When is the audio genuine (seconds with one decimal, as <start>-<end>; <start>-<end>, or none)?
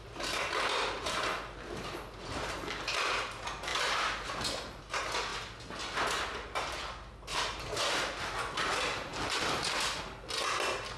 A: 0.0-7.3; 7.8-11.0